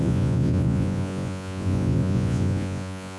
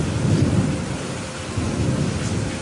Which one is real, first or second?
second